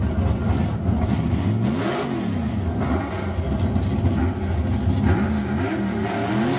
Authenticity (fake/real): real